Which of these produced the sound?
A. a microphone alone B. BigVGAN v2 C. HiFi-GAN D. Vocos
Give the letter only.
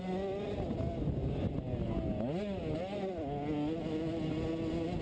A